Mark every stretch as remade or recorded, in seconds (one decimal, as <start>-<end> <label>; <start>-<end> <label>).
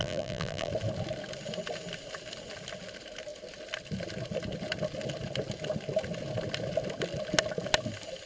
0.0-0.7 remade; 0.7-8.3 recorded